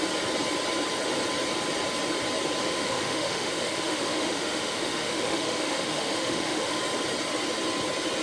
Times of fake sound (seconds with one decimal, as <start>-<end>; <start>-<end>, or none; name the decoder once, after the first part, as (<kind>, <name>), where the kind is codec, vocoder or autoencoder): 2.6-6.8 (autoencoder, DAC-VAE)